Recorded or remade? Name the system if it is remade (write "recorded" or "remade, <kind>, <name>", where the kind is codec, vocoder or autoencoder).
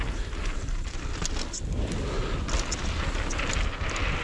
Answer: recorded